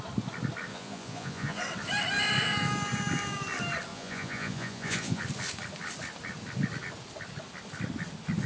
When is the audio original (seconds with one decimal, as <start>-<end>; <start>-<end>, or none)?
0.0-0.7; 1.6-3.9; 5.2-8.5